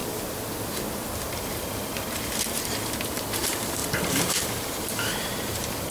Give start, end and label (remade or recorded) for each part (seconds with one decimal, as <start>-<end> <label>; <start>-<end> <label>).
0.0-3.1 recorded; 3.1-5.9 remade